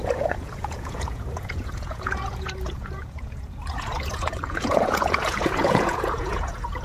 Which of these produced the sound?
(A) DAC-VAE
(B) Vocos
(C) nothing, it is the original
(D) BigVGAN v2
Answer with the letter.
B